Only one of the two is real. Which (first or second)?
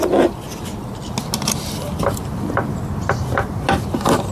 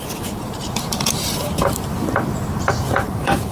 first